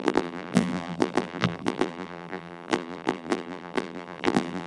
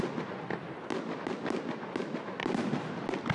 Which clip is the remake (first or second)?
first